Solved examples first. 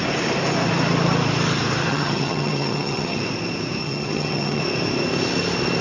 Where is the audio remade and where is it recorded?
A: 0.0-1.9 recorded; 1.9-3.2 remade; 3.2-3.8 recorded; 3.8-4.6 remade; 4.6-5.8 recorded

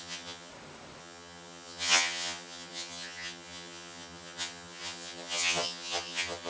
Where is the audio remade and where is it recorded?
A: 0.0-0.5 remade; 0.5-1.0 recorded; 1.0-6.5 remade

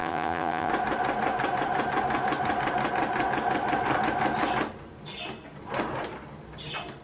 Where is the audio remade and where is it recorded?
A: 0.0-0.7 remade; 0.7-7.0 recorded

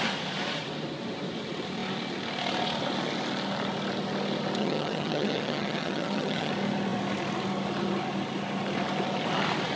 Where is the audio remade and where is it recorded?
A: 0.0-4.6 recorded; 4.6-6.5 remade; 6.5-9.8 recorded